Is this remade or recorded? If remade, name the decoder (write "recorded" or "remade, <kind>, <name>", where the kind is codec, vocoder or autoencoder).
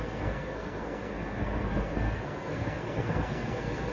remade, codec, SNAC